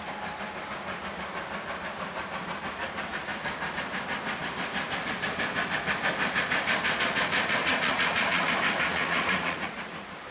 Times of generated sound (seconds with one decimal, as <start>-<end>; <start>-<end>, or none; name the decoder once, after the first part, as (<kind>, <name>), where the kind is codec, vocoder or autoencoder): 7.6-8.5 (vocoder, Vocos); 8.9-9.9